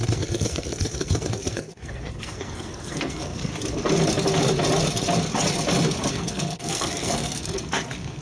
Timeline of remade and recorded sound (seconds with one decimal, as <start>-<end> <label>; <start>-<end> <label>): 0.0-3.4 remade; 3.4-6.1 recorded; 6.1-8.2 remade